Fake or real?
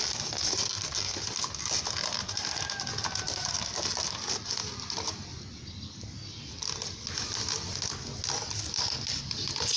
real